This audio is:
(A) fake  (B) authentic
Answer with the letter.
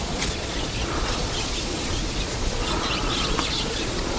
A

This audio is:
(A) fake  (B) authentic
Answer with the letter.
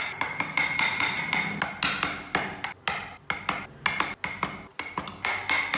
B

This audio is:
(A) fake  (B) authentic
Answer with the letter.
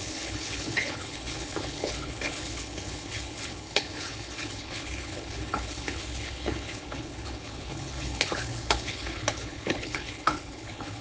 A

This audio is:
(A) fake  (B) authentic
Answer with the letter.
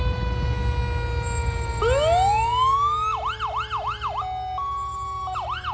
B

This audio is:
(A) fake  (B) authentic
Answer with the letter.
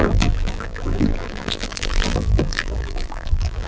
A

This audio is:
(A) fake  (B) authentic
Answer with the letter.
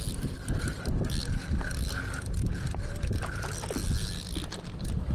B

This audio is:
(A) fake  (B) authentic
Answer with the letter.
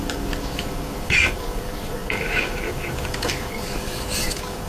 A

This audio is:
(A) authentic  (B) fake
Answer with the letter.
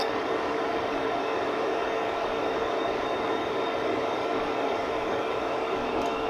B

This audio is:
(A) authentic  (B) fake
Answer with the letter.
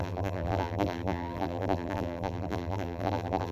B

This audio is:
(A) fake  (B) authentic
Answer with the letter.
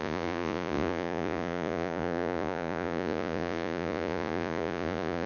A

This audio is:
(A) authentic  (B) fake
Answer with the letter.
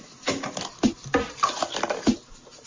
A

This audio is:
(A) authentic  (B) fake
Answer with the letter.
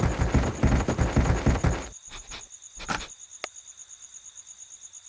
A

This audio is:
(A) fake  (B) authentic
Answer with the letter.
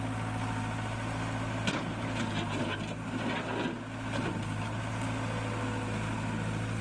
B